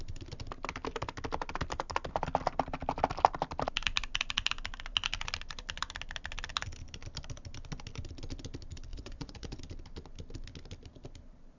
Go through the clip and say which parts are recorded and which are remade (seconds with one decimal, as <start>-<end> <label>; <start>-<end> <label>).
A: 0.0-8.9 recorded; 8.9-9.6 remade; 9.6-11.6 recorded